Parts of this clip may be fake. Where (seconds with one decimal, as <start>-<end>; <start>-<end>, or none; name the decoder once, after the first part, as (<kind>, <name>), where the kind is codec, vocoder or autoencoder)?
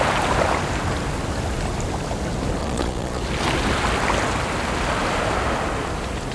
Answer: 2.6-3.2 (vocoder, Vocos)